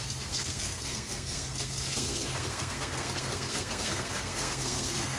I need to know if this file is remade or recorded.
remade